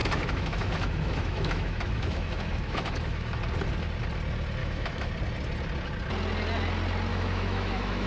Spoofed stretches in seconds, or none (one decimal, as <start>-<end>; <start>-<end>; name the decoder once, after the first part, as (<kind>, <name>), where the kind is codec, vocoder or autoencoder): 0.0-3.4 (autoencoder, DAC-VAE); 4.6-5.1; 7.1-8.1